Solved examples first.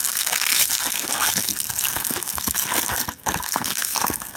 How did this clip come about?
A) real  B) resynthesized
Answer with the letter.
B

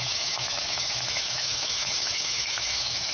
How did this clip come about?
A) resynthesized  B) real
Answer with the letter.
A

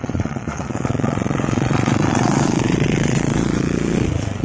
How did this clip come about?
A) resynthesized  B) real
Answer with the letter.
A